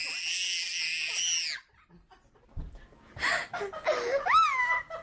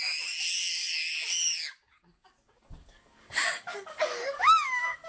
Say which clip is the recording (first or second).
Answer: first